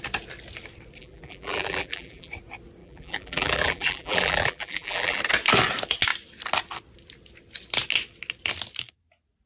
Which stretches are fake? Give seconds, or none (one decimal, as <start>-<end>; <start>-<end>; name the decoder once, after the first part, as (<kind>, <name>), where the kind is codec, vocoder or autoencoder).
1.0-2.3 (vocoder, BigVGAN v2); 2.8-5.2